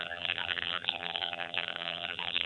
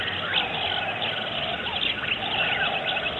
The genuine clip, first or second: second